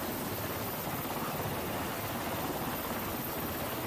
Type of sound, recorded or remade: recorded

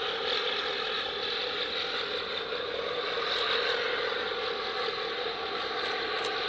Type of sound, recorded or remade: recorded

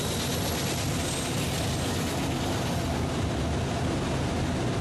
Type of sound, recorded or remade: recorded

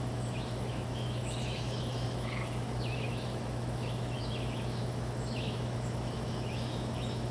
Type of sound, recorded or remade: remade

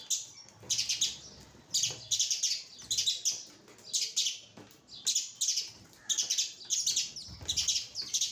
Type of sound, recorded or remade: recorded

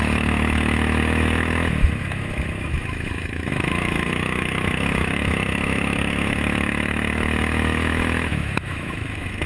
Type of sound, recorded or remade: remade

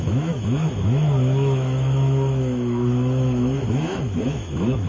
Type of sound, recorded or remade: remade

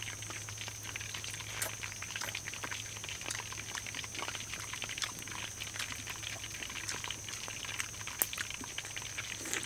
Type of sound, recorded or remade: recorded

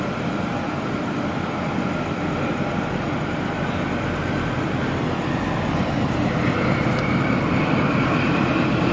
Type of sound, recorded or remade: recorded